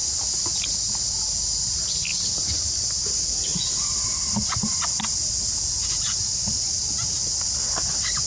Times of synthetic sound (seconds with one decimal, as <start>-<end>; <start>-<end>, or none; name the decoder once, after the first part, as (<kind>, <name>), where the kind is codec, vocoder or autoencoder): none